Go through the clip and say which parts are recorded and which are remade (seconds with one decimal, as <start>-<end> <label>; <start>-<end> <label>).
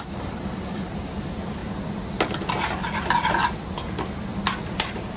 0.0-1.6 remade; 1.6-4.7 recorded; 4.7-5.2 remade